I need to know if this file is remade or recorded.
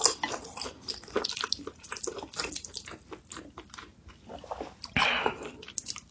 recorded